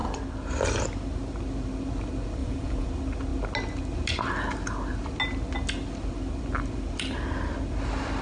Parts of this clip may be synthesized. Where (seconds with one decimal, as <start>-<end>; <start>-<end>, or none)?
2.4-2.9